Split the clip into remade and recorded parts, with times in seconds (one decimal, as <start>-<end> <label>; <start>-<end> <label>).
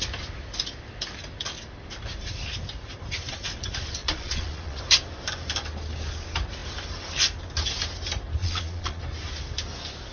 0.0-4.0 recorded; 4.0-4.8 remade; 4.8-8.4 recorded; 8.4-9.0 remade; 9.0-10.1 recorded